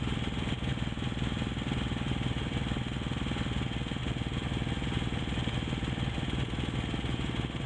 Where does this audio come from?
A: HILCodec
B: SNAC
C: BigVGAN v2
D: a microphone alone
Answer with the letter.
D